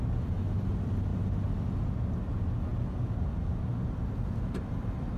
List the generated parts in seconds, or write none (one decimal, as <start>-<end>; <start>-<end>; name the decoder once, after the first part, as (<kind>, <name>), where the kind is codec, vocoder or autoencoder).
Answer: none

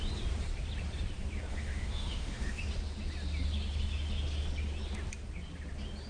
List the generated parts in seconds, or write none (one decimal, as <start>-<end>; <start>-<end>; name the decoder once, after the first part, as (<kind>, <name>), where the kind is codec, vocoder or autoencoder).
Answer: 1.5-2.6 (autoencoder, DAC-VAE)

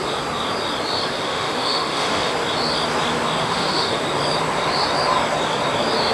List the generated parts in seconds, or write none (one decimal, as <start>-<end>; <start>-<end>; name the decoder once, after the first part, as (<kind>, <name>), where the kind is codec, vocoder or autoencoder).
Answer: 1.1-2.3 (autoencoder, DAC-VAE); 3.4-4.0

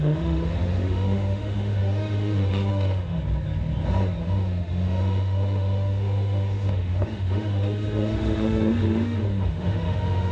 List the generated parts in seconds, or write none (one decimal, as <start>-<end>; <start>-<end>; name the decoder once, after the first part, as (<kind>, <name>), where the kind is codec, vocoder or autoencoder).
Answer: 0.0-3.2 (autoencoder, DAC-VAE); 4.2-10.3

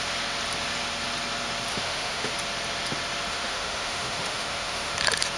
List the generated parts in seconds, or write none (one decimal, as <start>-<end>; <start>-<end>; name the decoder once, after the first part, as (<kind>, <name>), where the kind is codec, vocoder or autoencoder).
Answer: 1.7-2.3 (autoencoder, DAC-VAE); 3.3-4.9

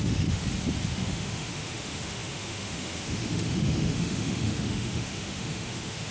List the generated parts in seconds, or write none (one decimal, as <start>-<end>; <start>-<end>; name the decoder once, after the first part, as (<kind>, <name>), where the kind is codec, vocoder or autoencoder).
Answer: 0.0-0.4 (autoencoder, DAC-VAE); 0.9-6.1